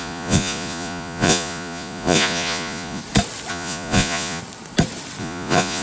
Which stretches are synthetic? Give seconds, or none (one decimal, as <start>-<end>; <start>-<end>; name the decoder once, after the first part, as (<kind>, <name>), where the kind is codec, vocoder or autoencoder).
0.0-3.0 (vocoder, Vocos); 3.5-4.4; 5.2-5.8